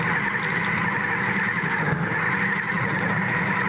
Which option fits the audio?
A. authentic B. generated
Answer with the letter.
A